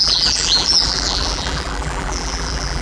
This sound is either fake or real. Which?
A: fake